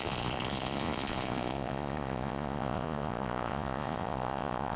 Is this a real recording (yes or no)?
no